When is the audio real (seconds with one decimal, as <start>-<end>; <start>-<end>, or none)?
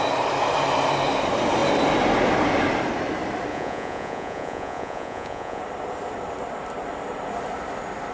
0.0-3.5; 5.6-8.1